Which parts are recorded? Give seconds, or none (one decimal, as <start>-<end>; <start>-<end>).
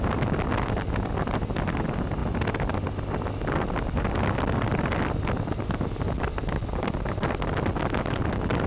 0.0-8.7